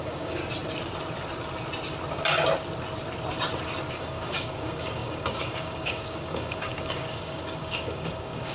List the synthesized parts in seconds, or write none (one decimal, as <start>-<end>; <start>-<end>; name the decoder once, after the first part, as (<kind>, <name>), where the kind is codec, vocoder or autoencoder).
0.0-0.4 (codec, DAC); 4.0-8.5